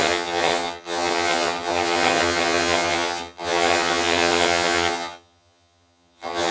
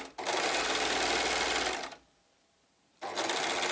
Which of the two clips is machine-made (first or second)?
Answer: first